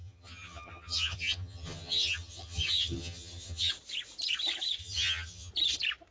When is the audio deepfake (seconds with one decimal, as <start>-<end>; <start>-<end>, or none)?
0.0-3.7; 4.8-5.5